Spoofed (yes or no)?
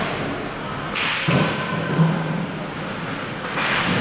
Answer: no